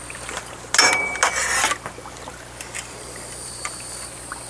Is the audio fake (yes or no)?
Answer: no